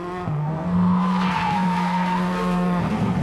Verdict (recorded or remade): remade